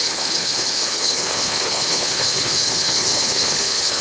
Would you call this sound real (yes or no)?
no